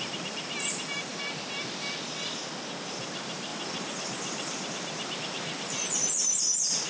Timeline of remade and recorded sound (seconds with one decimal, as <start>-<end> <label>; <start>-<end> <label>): 0.0-1.1 remade; 1.1-3.0 recorded; 3.0-6.9 remade